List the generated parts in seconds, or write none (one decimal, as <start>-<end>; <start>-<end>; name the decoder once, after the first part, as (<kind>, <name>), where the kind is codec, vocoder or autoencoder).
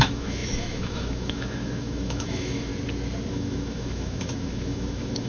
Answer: 0.0-2.7 (autoencoder, DAC-VAE); 3.3-5.3